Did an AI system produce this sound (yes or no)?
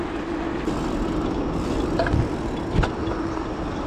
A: no